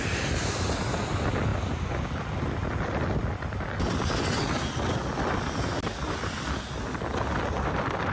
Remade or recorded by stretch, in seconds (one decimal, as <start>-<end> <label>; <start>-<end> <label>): 0.0-8.1 recorded